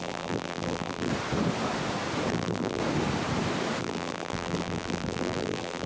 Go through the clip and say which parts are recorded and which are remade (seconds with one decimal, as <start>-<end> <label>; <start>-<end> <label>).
0.0-1.1 remade; 1.1-2.3 recorded; 2.3-2.8 remade; 2.8-3.8 recorded; 3.8-5.9 remade